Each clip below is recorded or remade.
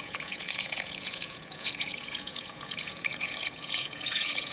remade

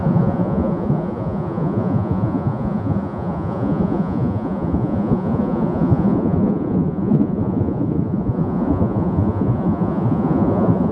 remade